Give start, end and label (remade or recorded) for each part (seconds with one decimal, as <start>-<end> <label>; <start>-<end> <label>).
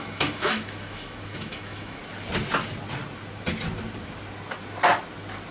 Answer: 0.0-2.0 remade; 2.0-5.5 recorded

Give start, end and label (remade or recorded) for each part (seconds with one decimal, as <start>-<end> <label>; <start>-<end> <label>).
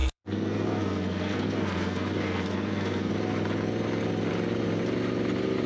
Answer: 0.0-3.1 remade; 3.1-5.7 recorded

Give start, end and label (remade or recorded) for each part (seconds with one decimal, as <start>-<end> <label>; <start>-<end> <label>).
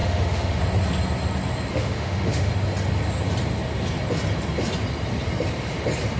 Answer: 0.0-0.6 remade; 0.6-1.7 recorded; 1.7-2.5 remade; 2.5-6.2 recorded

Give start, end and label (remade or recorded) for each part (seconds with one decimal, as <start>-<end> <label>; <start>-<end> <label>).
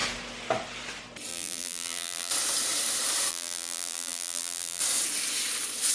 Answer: 0.0-1.3 recorded; 1.3-2.3 remade; 2.3-3.3 recorded; 3.3-4.8 remade; 4.8-5.9 recorded